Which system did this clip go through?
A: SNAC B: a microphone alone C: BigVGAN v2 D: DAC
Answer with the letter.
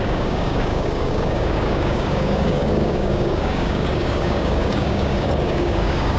D